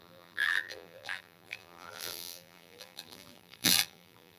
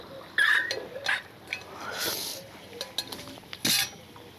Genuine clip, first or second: second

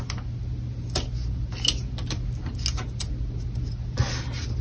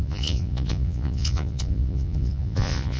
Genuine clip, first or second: first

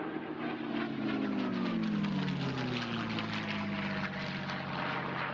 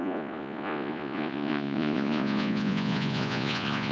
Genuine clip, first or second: first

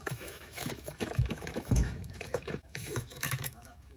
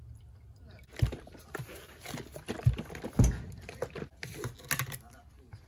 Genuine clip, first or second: second